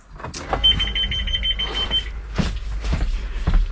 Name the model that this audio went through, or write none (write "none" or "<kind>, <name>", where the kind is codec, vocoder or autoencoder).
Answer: none